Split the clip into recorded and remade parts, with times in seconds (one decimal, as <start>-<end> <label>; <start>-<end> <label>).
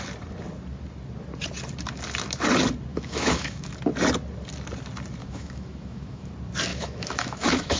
0.0-2.9 recorded; 2.9-3.7 remade; 3.7-5.2 recorded; 5.2-6.3 remade; 6.3-6.7 recorded; 6.7-7.8 remade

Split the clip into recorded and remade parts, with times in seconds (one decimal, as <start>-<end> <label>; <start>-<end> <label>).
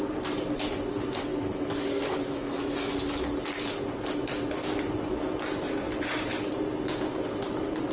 0.0-1.3 recorded; 1.3-3.0 remade; 3.0-7.9 recorded